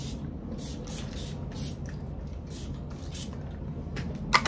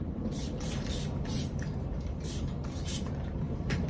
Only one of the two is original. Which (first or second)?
first